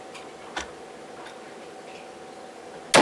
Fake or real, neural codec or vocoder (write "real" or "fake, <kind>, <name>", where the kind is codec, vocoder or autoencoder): real